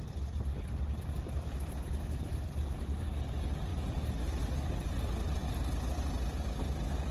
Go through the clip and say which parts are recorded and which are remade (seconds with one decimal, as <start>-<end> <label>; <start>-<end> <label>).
0.0-0.5 recorded; 0.5-3.0 remade; 3.0-7.1 recorded